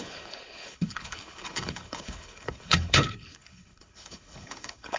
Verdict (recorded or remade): remade